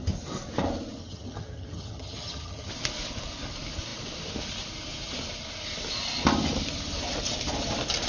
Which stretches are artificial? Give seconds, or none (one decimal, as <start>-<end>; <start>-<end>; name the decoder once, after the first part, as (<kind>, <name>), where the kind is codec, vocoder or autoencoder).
1.0-2.7 (vocoder, HiFi-GAN)